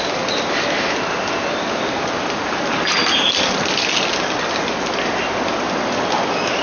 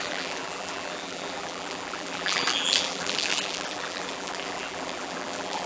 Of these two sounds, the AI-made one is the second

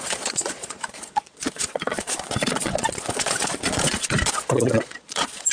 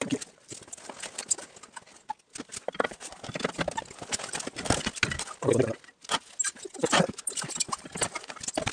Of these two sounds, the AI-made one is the first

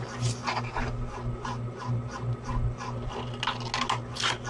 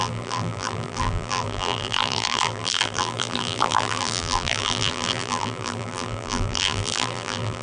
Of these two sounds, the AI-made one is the second